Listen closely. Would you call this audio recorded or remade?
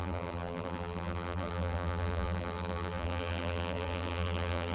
remade